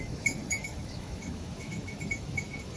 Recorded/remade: remade